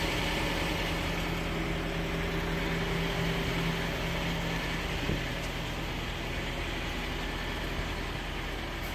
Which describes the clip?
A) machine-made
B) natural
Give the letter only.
B